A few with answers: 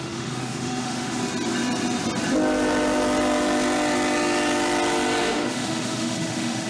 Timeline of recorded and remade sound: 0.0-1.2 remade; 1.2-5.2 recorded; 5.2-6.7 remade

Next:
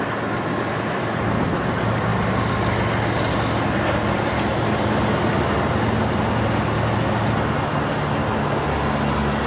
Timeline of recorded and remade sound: 0.0-9.5 recorded

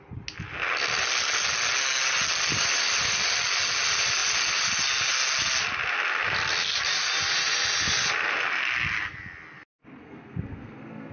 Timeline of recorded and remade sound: 0.0-10.0 recorded; 10.0-11.1 remade

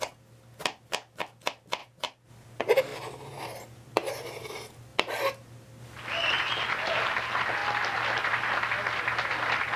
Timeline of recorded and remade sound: 0.0-1.8 recorded; 1.8-2.3 remade; 2.3-9.8 recorded

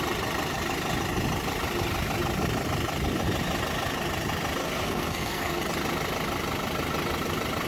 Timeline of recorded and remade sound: 0.0-4.6 recorded; 4.6-5.6 remade; 5.6-7.7 recorded